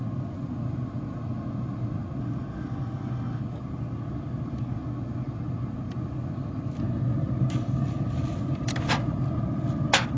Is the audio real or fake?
real